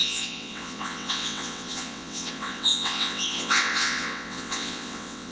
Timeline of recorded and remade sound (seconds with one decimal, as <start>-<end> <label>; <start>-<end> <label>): 0.0-5.3 remade